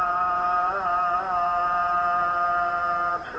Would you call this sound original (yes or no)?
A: no